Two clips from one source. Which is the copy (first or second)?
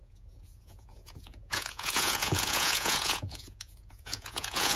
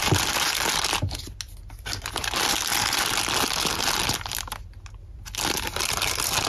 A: first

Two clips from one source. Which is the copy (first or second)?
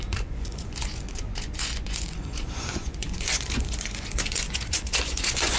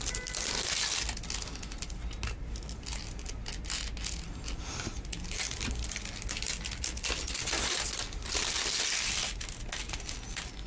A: first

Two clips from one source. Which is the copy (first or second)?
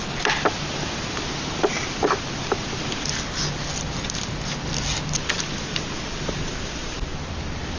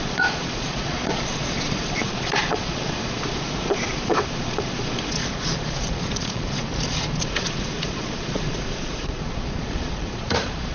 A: second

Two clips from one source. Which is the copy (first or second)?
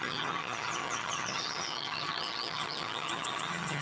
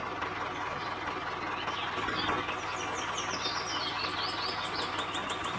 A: first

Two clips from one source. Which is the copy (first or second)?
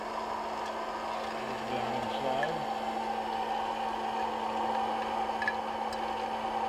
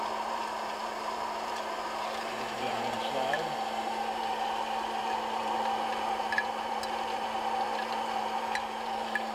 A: second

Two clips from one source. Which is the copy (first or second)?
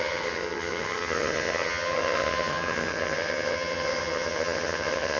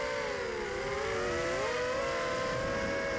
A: first